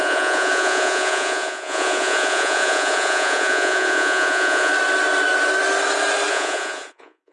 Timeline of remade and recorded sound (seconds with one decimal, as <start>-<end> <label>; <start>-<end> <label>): 0.0-4.7 remade; 4.7-6.3 recorded; 6.3-7.3 remade